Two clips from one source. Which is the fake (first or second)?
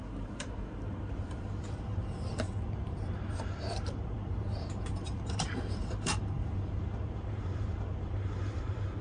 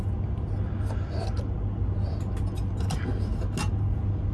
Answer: first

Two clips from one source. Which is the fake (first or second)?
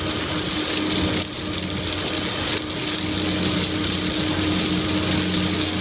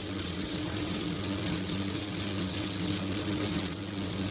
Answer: second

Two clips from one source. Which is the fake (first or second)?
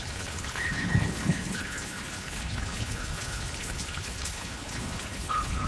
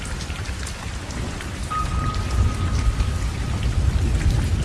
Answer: first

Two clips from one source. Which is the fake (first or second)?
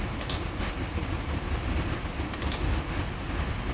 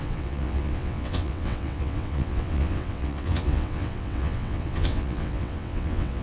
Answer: second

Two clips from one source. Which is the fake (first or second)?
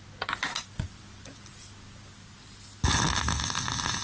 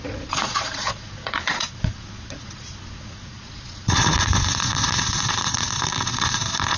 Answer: second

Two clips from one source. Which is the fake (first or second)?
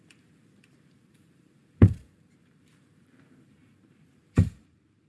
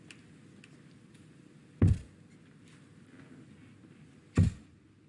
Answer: first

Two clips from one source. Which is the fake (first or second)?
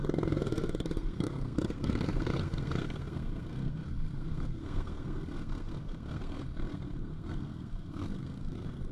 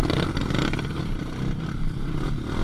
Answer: first